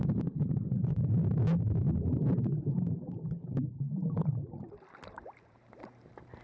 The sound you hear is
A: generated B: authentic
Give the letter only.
A